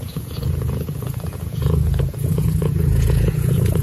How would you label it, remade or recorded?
remade